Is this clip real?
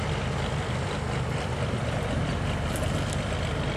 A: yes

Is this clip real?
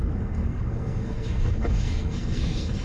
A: no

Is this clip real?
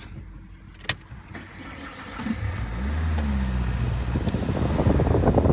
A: yes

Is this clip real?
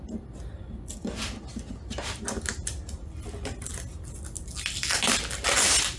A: yes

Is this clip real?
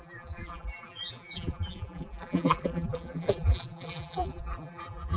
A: no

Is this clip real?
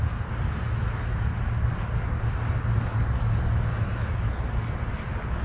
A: yes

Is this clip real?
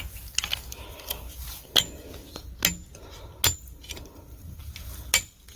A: yes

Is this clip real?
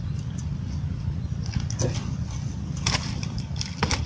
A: yes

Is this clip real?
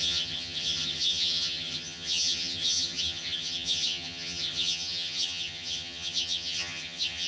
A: no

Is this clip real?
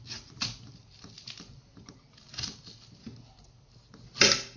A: yes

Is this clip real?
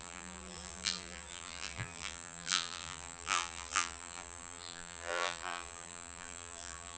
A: no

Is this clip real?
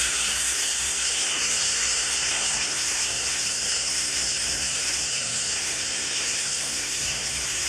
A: no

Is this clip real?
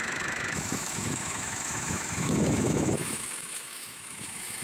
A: no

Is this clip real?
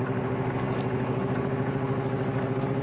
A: yes